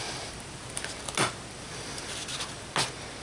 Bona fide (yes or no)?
yes